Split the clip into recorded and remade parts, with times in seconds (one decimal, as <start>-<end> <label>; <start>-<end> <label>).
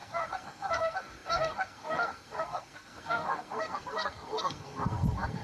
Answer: 0.0-5.4 remade